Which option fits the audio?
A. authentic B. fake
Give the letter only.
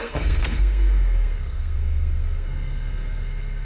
B